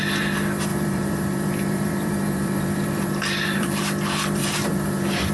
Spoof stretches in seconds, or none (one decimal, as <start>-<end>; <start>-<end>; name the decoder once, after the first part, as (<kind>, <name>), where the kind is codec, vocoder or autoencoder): 0.7-3.8 (vocoder, BigVGAN v2); 4.4-5.3